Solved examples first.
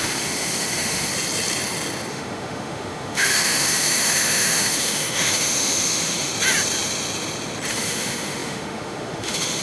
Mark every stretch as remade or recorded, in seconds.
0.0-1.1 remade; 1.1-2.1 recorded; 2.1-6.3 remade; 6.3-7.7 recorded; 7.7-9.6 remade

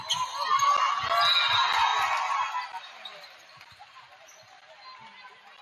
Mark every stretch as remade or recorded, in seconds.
0.0-5.6 recorded

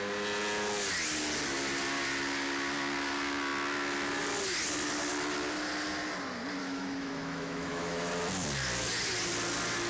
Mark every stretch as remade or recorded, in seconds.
0.0-6.6 recorded; 6.6-8.1 remade; 8.1-9.9 recorded

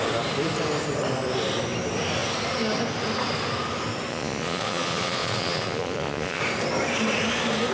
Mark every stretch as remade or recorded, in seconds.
0.0-4.1 recorded; 4.1-6.4 remade; 6.4-7.7 recorded

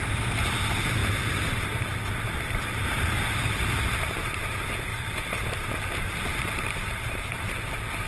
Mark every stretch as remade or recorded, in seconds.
0.0-4.9 remade; 4.9-5.5 recorded; 5.5-8.1 remade